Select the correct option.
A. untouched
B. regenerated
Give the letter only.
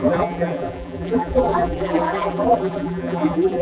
B